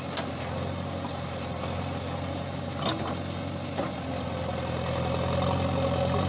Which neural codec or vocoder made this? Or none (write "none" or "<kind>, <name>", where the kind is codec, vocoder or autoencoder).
none